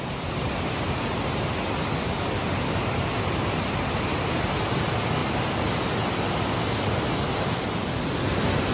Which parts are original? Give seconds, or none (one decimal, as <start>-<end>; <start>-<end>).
0.0-8.7